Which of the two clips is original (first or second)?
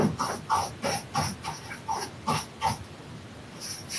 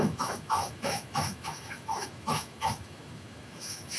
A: first